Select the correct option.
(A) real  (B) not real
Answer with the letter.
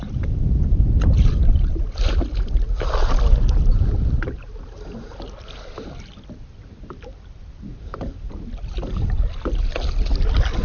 A